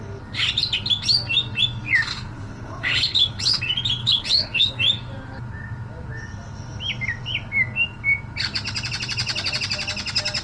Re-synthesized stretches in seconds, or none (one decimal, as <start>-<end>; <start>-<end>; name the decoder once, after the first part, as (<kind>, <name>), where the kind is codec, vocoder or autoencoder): 2.1-3.6 (codec, HILCodec); 4.0-4.8